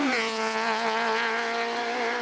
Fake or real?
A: real